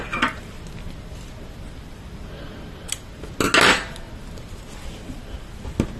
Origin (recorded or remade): recorded